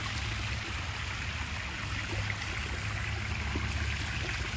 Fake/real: real